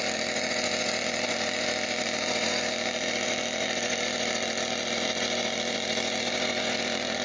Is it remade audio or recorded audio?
remade